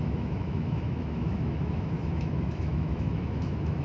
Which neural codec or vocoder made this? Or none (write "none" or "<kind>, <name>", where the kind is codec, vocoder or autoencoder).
autoencoder, DAC-VAE